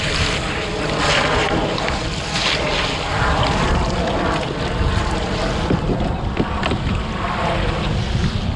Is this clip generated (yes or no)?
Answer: no